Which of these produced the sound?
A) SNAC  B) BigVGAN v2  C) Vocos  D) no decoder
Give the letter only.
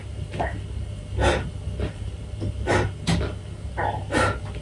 D